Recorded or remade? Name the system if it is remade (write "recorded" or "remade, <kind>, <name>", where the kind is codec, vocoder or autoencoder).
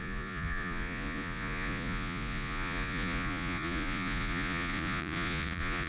remade, vocoder, Vocos